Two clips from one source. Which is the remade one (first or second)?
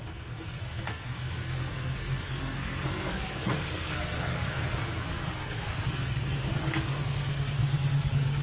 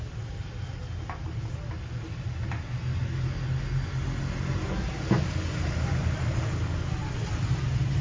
first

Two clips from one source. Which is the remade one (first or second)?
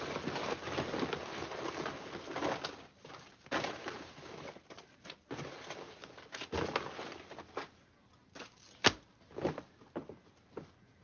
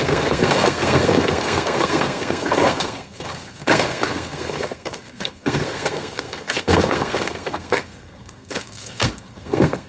second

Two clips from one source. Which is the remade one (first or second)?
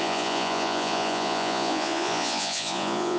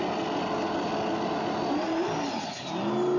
first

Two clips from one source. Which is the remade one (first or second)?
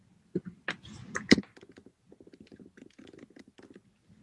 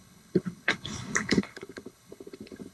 second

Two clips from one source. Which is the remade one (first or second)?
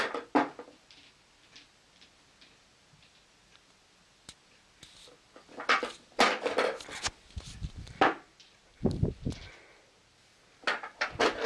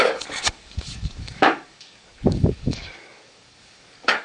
second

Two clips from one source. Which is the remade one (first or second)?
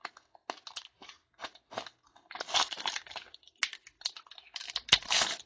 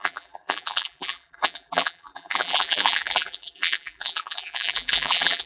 second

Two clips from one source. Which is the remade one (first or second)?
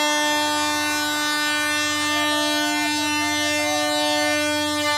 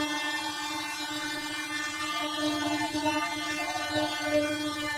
second